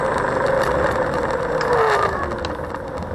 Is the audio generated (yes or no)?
no